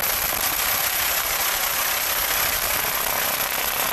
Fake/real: real